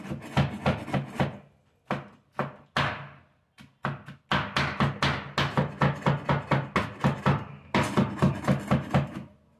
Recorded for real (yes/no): yes